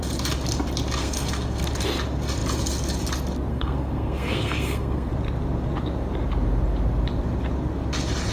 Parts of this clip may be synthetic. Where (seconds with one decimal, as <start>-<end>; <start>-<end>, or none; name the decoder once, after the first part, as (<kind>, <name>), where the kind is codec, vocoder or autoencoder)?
1.0-1.7 (codec, SNAC); 3.5-5.1